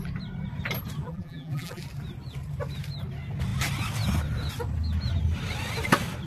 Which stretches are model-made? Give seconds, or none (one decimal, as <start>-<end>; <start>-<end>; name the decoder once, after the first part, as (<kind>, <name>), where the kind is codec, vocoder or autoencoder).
1.0-1.8 (vocoder, BigVGAN v2)